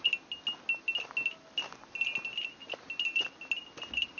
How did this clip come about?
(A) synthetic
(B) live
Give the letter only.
B